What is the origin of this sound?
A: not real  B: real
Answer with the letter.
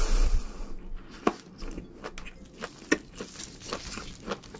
B